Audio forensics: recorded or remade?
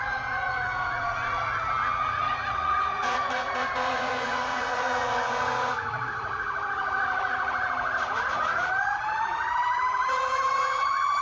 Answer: remade